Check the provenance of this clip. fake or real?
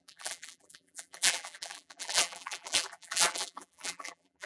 fake